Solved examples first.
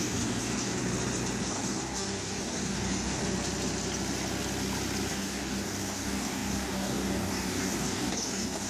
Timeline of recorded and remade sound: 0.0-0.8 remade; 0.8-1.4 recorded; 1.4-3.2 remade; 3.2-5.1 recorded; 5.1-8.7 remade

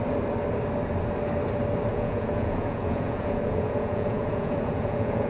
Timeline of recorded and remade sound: 0.0-1.9 recorded; 1.9-5.3 remade

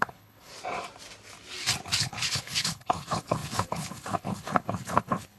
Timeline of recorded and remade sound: 0.0-0.5 remade; 0.5-2.0 recorded; 2.0-5.4 remade

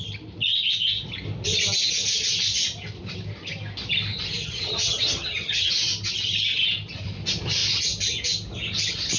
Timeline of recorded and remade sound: 0.0-4.4 recorded; 4.4-5.7 remade; 5.7-9.2 recorded